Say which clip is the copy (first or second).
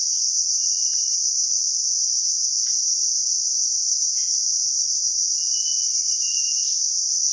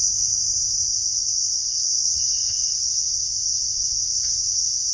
second